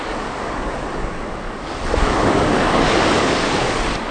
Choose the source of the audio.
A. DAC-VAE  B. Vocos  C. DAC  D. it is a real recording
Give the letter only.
C